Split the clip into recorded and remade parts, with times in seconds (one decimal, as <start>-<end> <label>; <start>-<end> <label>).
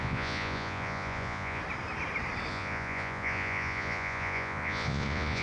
0.0-1.6 remade; 1.6-2.5 recorded; 2.5-5.4 remade